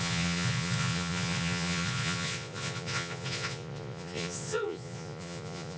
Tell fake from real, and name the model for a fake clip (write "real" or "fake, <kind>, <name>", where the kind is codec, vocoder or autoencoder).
fake, vocoder, Vocos